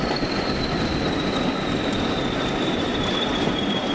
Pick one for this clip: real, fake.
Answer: real